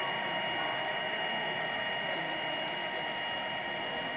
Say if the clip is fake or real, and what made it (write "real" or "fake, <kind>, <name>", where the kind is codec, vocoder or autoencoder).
real